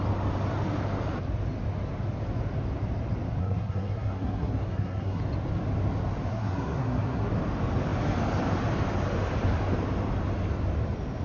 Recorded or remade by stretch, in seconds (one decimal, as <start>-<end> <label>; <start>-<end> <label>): 0.0-3.4 recorded; 3.4-5.2 remade; 5.2-6.3 recorded; 6.3-7.3 remade; 7.3-11.2 recorded